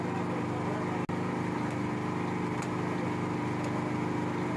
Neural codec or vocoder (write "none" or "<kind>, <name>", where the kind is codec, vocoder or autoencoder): none